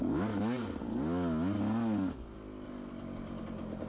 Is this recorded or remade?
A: recorded